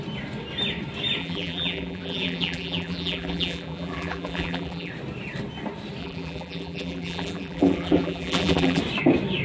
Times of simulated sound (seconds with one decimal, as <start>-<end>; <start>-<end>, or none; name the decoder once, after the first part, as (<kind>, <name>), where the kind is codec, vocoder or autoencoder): 1.2-4.9 (vocoder, BigVGAN v2); 6.0-8.8